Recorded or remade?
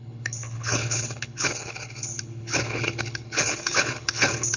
remade